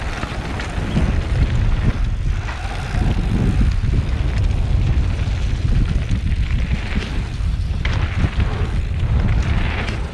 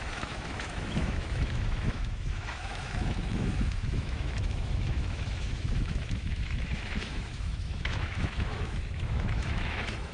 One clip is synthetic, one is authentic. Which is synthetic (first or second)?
second